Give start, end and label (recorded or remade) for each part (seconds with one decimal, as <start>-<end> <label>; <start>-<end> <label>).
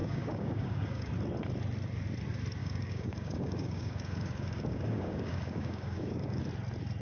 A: 0.0-1.1 remade; 1.1-2.6 recorded; 2.6-6.4 remade; 6.4-7.0 recorded